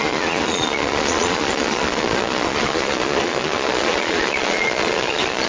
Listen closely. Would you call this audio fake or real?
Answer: fake